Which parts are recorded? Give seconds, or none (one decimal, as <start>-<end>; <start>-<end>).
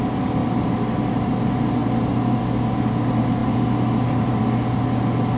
0.0-0.4; 1.3-1.8; 2.3-3.4; 4.4-5.4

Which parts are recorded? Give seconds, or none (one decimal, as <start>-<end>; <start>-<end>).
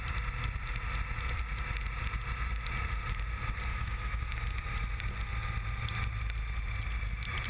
0.0-3.7; 4.2-7.5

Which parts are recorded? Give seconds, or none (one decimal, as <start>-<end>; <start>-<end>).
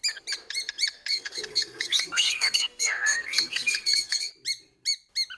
0.0-1.1; 4.3-5.4